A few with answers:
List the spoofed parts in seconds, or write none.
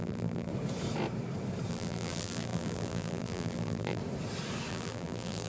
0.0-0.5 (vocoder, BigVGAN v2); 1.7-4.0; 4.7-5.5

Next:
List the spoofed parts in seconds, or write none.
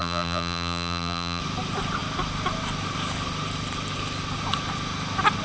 0.0-1.4 (vocoder, BigVGAN v2)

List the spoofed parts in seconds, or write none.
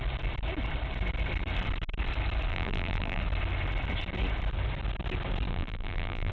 2.5-3.2 (vocoder, BigVGAN v2); 5.5-6.3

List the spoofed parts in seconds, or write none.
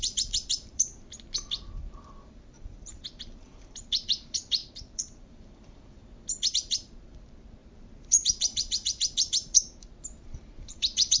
0.0-0.9 (vocoder, BigVGAN v2); 2.1-6.0; 6.5-11.2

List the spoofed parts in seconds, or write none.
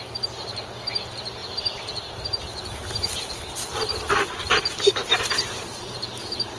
none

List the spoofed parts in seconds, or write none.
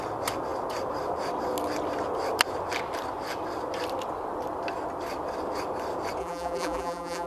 6.2-7.3 (vocoder, BigVGAN v2)